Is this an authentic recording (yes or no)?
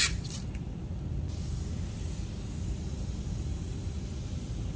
no